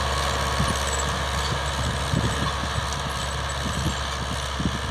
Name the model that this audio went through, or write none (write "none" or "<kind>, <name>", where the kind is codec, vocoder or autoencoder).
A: none